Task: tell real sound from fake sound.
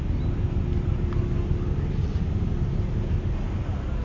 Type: real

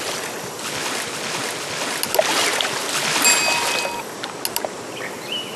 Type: real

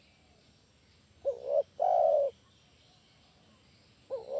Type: real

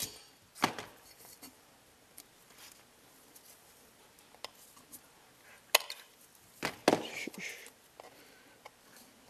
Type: real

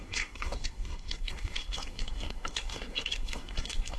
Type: fake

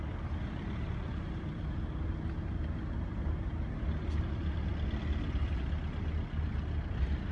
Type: real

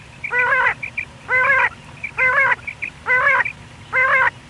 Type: real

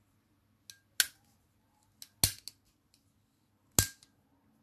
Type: real